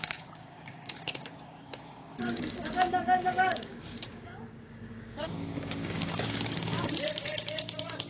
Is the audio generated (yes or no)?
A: yes